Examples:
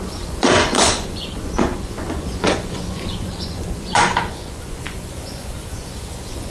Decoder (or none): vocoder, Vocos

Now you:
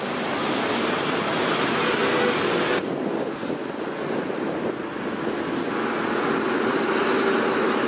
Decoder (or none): none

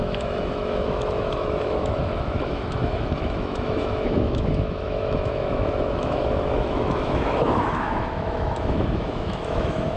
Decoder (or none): autoencoder, DAC-VAE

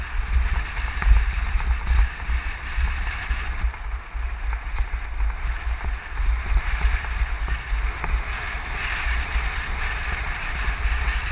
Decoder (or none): none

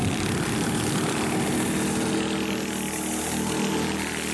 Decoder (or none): none